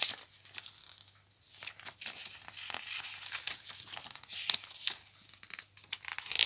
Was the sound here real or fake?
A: real